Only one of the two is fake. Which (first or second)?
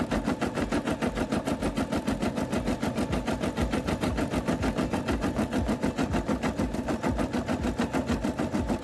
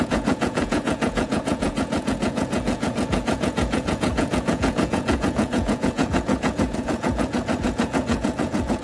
second